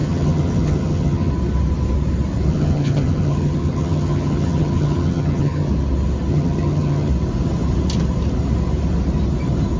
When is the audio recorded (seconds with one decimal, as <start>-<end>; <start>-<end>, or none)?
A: 1.3-2.5; 5.7-6.3; 7.1-9.8